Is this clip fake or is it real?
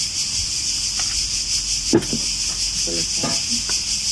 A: real